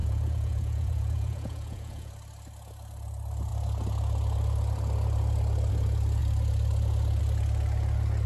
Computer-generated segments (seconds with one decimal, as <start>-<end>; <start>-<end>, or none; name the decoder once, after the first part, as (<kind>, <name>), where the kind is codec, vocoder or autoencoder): 0.0-2.1 (vocoder, Vocos)